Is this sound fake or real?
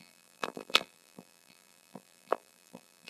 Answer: fake